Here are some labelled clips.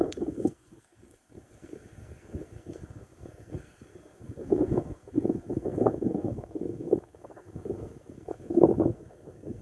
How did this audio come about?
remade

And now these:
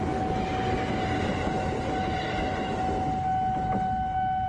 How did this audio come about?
recorded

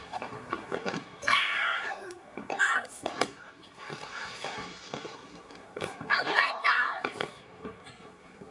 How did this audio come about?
remade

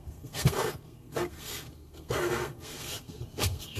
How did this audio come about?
remade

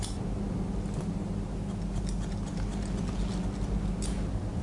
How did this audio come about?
recorded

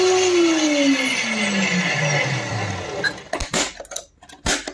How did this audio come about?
recorded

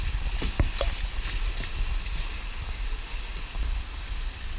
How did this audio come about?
recorded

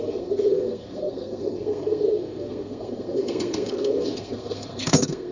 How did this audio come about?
remade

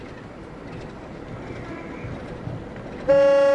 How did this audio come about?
recorded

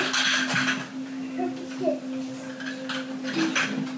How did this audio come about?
recorded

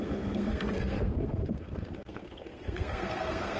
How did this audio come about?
remade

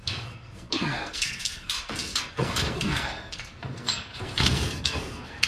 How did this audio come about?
remade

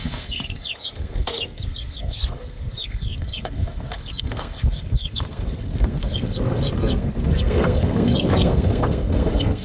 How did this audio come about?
remade